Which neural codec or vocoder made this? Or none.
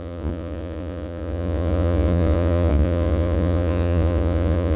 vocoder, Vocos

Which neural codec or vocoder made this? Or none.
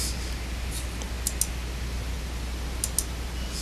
none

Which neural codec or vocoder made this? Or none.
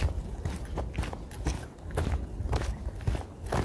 none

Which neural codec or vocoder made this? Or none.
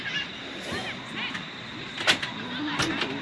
none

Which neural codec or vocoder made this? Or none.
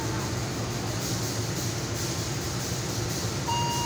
vocoder, BigVGAN v2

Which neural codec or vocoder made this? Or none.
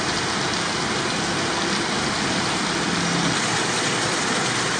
none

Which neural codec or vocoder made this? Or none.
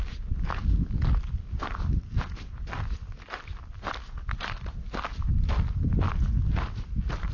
none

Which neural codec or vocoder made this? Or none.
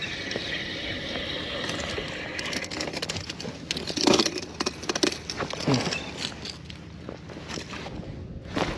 none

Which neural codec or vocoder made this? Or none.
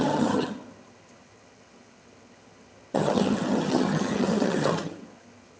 vocoder, HiFi-GAN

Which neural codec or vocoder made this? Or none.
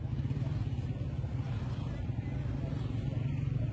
none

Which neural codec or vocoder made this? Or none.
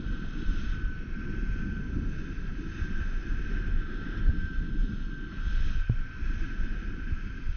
none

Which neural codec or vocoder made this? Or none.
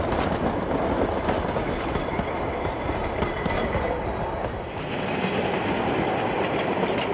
none